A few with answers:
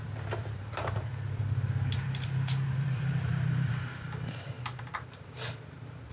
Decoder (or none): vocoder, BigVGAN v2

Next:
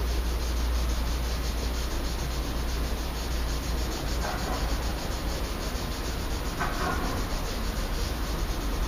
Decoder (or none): none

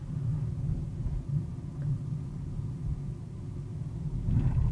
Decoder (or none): none